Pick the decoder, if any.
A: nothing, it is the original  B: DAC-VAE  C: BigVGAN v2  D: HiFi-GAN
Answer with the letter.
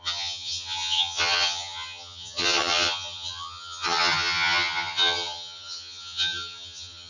D